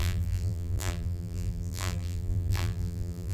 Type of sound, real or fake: fake